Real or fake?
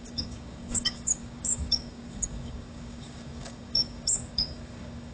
fake